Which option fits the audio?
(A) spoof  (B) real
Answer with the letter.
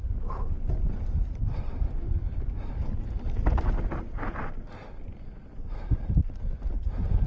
B